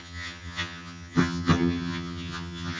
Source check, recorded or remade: remade